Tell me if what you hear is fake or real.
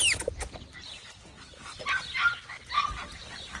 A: real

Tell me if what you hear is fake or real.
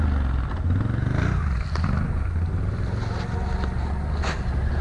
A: real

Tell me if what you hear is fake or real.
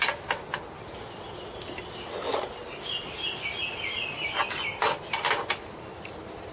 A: real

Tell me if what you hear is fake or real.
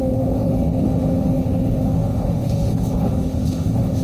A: fake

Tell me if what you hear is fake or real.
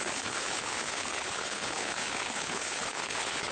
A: fake